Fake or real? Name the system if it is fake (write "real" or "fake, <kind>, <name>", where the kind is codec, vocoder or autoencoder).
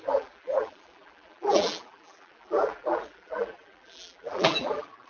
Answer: fake, vocoder, BigVGAN v2